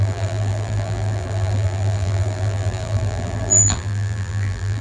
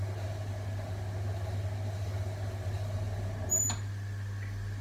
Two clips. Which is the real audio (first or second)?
second